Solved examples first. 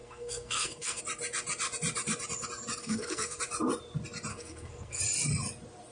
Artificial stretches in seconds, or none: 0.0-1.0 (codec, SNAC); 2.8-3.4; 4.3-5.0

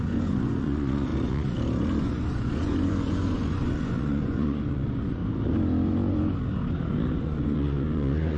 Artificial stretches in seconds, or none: 0.0-1.1 (vocoder, Vocos); 2.0-5.2; 7.2-8.4

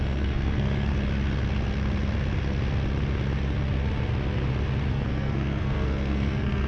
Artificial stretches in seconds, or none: 0.0-0.9 (codec, SNAC); 4.9-6.7

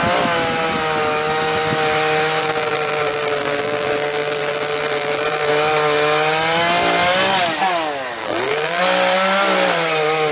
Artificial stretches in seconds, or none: 2.4-5.5 (vocoder, BigVGAN v2); 8.2-8.8